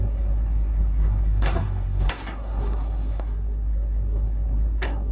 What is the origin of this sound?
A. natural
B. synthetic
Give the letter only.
B